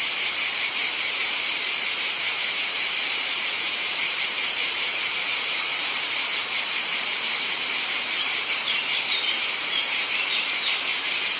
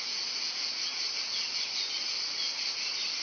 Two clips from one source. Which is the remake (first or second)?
first